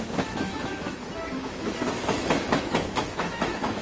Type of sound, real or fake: fake